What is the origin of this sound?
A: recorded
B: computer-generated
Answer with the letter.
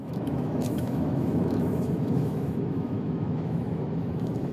B